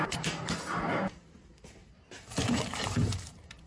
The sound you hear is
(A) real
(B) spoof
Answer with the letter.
B